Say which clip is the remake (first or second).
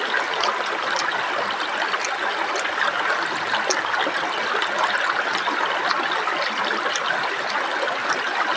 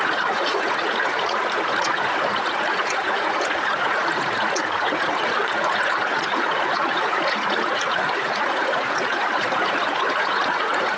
second